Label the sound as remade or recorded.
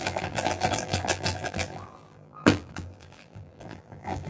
remade